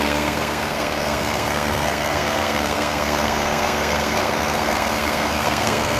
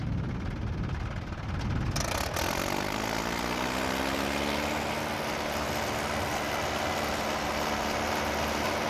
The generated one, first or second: first